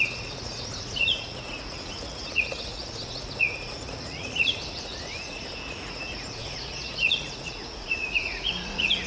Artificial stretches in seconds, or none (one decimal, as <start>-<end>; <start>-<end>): 0.0-9.1